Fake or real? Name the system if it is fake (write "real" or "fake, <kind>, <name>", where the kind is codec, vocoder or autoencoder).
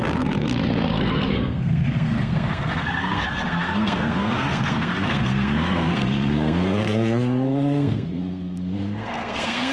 fake, codec, SNAC